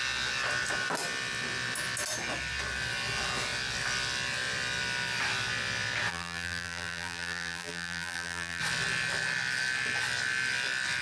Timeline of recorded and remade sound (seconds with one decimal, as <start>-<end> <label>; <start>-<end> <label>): 0.0-6.1 recorded; 6.1-8.6 remade; 8.6-11.0 recorded